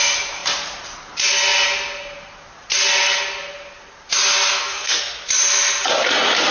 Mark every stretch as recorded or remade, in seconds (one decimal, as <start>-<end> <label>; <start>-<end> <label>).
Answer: 0.0-4.5 recorded; 4.5-5.0 remade; 5.0-6.5 recorded